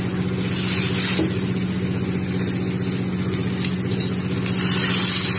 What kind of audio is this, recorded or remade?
recorded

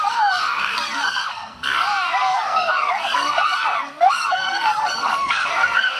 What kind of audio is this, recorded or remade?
remade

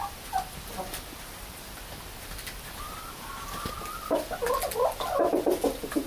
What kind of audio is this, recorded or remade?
recorded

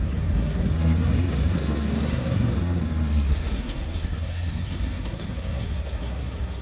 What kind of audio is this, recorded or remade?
remade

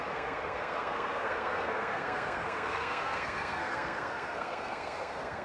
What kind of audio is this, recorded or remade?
remade